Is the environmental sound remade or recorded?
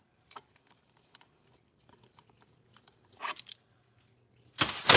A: remade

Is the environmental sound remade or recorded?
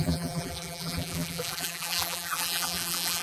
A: remade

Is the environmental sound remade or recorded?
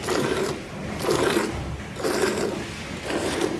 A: recorded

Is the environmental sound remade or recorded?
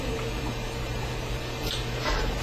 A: remade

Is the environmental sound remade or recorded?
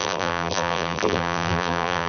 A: remade